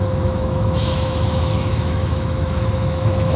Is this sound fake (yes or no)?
yes